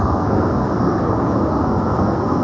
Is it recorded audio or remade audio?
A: remade